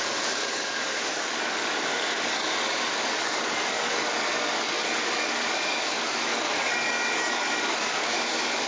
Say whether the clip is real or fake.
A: fake